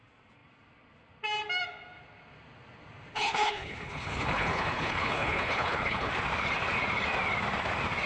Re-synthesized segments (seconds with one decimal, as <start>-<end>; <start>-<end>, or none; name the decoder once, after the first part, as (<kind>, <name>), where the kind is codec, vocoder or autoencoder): 3.1-6.1 (codec, HILCodec)

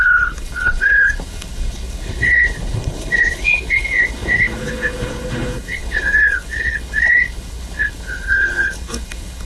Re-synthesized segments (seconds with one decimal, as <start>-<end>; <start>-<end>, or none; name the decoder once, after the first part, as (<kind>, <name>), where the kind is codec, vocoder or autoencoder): 0.0-9.4 (codec, HILCodec)